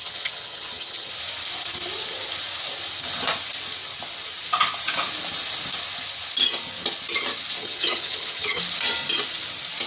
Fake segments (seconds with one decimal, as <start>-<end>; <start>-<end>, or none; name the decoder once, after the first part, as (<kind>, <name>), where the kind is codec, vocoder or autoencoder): 0.0-1.1 (vocoder, HiFi-GAN); 7.6-8.6

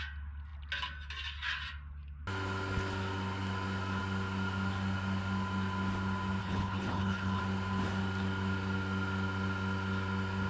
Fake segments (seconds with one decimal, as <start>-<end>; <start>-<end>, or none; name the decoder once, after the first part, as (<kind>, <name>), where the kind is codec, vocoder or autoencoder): 6.4-7.4 (codec, HILCodec)

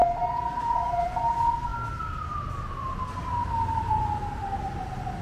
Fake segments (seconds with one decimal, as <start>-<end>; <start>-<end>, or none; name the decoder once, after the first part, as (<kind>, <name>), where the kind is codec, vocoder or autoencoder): none